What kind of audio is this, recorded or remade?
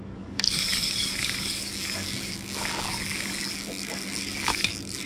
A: remade